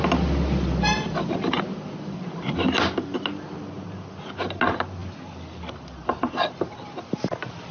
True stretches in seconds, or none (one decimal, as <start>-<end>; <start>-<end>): 0.0-7.7